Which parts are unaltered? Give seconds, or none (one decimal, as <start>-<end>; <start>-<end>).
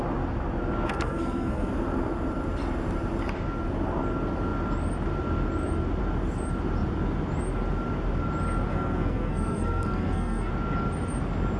0.0-0.9; 1.7-8.7; 10.5-11.6